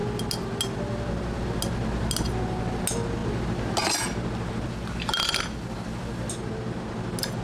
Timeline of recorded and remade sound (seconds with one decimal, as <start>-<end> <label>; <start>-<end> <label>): 0.0-7.4 recorded